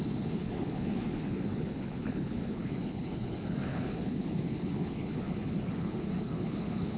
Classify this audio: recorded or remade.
remade